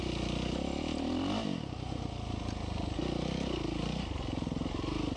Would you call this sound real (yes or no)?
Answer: yes